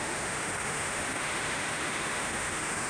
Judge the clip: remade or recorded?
remade